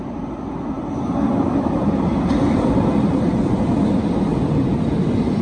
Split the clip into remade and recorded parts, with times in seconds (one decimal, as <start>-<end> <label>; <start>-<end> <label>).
0.0-5.4 recorded